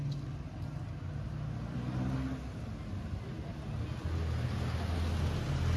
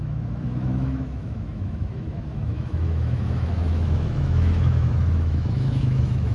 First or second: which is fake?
second